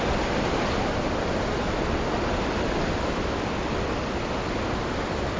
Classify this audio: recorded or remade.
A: recorded